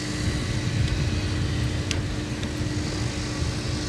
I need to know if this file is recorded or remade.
recorded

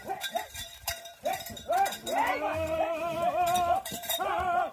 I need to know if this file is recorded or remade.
remade